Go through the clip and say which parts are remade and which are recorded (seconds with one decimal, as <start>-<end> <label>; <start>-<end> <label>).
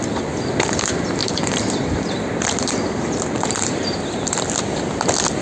0.0-1.2 recorded; 1.2-4.4 remade; 4.4-5.4 recorded